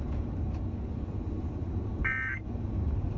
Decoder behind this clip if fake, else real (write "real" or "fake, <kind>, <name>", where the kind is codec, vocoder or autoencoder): real